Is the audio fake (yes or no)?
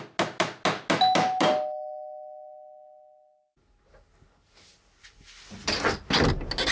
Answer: no